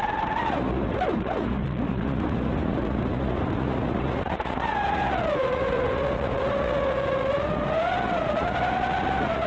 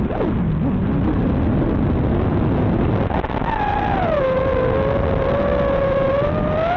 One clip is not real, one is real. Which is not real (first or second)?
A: first